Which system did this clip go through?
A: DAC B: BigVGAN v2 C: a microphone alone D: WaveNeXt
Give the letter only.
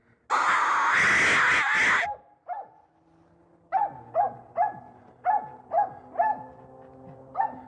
C